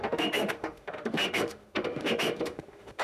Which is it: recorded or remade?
remade